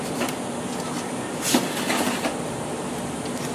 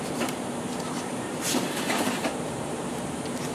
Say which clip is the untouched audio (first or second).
first